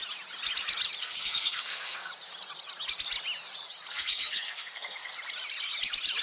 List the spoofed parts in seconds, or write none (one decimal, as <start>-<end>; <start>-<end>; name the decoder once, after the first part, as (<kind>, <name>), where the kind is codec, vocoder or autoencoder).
1.0-2.1 (codec, SNAC); 3.9-5.1